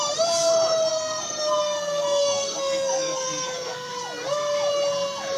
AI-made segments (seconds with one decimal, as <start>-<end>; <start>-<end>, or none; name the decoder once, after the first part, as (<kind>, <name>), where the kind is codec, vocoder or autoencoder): 0.9-3.9 (codec, SNAC)

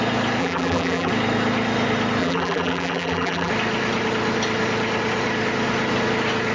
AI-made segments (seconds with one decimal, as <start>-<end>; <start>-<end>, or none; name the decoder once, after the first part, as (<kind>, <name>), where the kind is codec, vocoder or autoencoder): 0.4-1.1 (vocoder, BigVGAN v2); 2.2-3.5

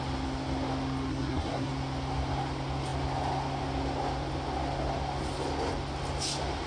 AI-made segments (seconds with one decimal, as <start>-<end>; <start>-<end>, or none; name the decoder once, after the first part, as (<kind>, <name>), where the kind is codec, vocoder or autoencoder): 1.1-1.7 (codec, SNAC)

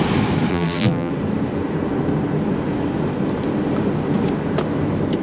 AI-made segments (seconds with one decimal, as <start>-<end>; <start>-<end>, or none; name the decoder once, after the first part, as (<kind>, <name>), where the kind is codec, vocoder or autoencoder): 0.5-1.1 (vocoder, BigVGAN v2)

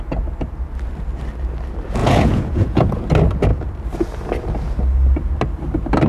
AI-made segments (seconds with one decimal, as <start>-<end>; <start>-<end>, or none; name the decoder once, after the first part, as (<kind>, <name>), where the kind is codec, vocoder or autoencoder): 2.0-3.0 (vocoder, Vocos)

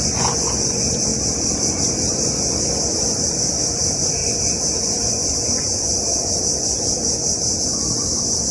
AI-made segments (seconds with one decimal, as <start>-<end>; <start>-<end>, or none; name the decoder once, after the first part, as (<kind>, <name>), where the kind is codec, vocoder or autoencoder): 0.0-1.1 (vocoder, Vocos); 1.6-8.5

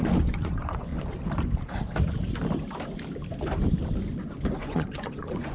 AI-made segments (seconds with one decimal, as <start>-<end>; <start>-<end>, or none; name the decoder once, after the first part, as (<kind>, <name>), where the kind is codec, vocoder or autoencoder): 0.0-0.9 (vocoder, Vocos); 4.2-5.5